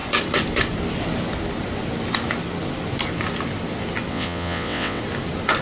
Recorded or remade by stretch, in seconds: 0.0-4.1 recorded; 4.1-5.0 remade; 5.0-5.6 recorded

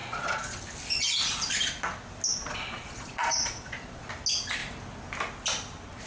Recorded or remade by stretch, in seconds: 0.0-0.6 remade; 0.6-2.3 recorded; 2.3-4.1 remade; 4.1-6.1 recorded

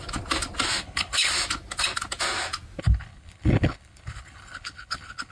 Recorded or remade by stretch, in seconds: 0.0-0.8 recorded; 0.8-1.3 remade; 1.3-2.8 recorded; 2.8-5.3 remade

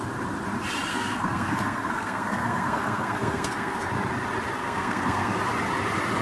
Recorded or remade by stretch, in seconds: 0.0-0.9 recorded; 0.9-3.9 remade; 3.9-4.6 recorded; 4.6-5.4 remade; 5.4-6.2 recorded

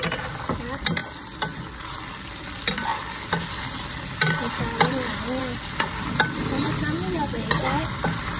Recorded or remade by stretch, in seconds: 0.0-8.4 recorded

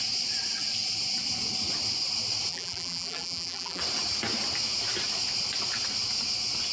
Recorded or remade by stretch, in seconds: 0.0-2.5 recorded; 2.5-3.8 remade; 3.8-6.7 recorded

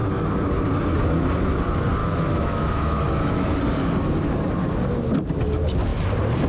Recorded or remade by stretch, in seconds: 0.0-2.0 recorded; 2.0-3.6 remade; 3.6-6.5 recorded

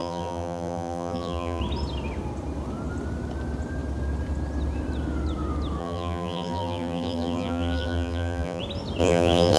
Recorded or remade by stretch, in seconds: 0.0-1.6 remade; 1.6-5.8 recorded; 5.8-8.6 remade; 8.6-9.0 recorded; 9.0-9.6 remade